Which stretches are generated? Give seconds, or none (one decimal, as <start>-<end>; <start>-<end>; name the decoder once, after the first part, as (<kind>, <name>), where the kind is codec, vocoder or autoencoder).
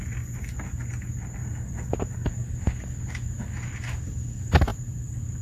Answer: 1.4-1.9 (vocoder, BigVGAN v2); 4.7-5.4